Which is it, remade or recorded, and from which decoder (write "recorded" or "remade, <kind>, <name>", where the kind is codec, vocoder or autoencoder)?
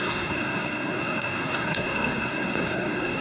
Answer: remade, codec, SNAC